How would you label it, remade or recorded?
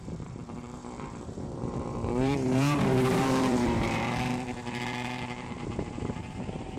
remade